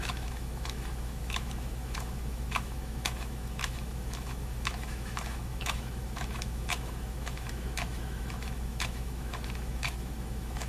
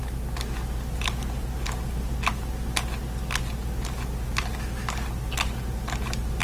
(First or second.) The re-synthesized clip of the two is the first